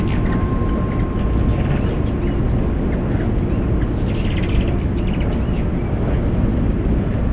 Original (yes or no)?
yes